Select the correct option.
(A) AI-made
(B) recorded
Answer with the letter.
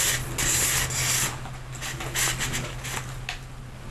B